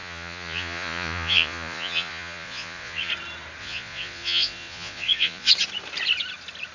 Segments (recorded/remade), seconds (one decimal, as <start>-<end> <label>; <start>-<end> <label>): 0.0-3.1 remade; 3.1-3.6 recorded; 3.6-5.5 remade; 5.5-6.7 recorded